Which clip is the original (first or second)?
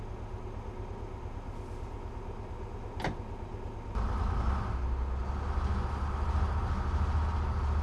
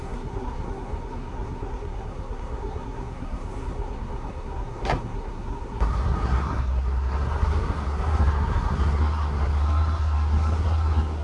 first